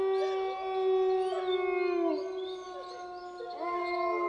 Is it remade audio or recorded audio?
recorded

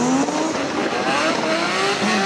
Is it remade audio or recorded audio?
recorded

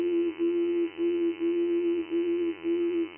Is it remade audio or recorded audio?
remade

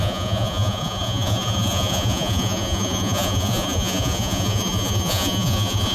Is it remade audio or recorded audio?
remade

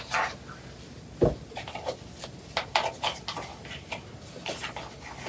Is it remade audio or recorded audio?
recorded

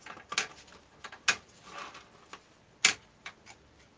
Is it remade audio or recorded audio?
recorded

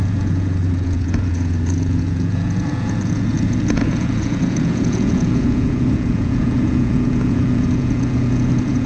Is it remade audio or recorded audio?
remade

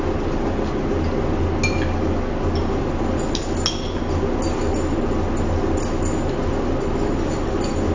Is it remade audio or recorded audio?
recorded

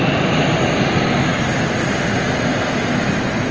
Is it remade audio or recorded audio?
recorded